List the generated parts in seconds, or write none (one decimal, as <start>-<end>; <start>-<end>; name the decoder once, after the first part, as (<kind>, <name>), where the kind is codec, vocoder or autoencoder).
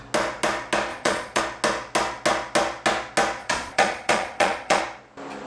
0.9-1.4 (vocoder, Vocos); 3.4-4.8